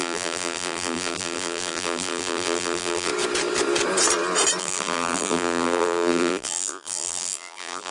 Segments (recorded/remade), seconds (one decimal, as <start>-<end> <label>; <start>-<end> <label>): 0.0-3.1 remade; 3.1-4.6 recorded; 4.6-7.9 remade